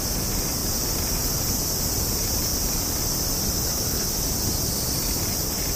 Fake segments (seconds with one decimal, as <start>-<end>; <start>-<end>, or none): none